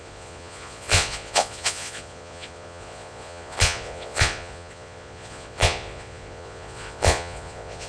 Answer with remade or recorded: remade